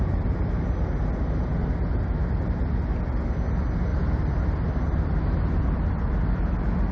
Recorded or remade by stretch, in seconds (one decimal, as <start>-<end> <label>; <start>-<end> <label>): 0.0-3.9 recorded; 3.9-6.1 remade; 6.1-6.9 recorded